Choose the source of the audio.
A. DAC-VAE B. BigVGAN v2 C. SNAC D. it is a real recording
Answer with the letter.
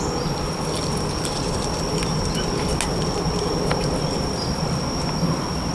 D